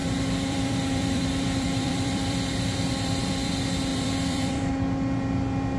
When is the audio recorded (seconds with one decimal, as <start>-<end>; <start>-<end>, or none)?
3.5-3.9; 4.7-5.8